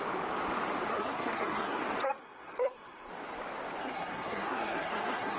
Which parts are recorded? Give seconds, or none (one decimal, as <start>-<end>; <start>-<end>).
0.0-0.9; 1.8-2.2; 3.1-3.8